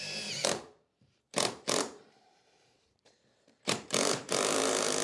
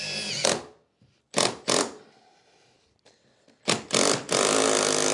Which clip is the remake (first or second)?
first